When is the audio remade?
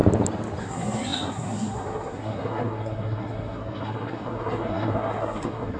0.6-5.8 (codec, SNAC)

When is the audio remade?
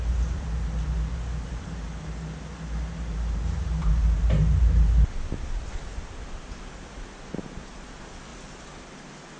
none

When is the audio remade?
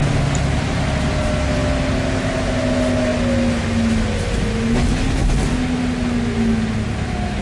none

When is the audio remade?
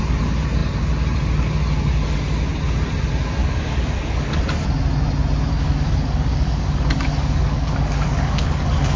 3.4-4.4 (codec, DAC); 5.5-9.0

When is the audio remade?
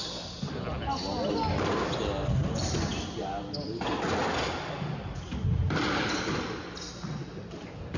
none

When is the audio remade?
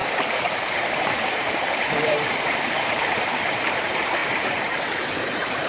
0.0-5.7 (vocoder, BigVGAN v2)